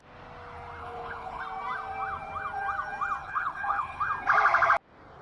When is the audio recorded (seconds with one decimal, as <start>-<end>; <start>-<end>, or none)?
0.0-0.8; 1.4-3.2; 4.0-5.2